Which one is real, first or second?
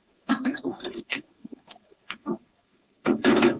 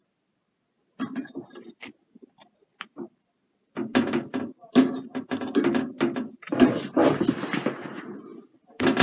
second